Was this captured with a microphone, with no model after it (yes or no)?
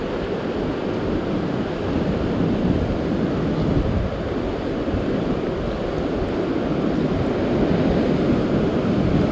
yes